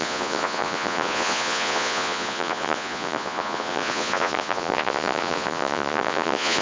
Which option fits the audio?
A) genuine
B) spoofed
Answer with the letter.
B